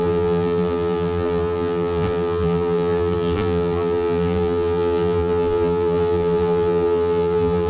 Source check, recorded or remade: remade